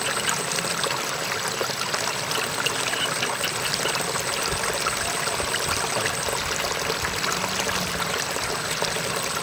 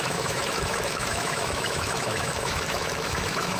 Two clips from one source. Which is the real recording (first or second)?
first